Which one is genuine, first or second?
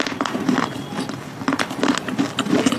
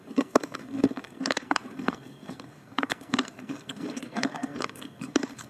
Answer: first